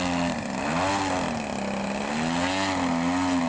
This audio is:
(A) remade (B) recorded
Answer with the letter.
B